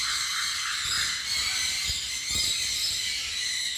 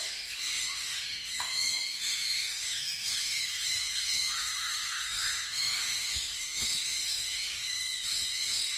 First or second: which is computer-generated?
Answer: second